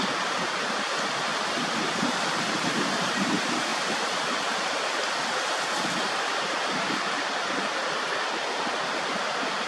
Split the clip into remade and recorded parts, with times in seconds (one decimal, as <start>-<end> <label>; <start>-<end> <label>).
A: 0.0-9.7 recorded